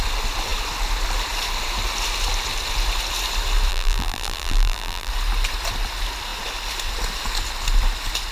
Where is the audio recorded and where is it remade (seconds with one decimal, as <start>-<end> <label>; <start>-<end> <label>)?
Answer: 0.0-3.7 recorded; 3.7-5.1 remade; 5.1-8.3 recorded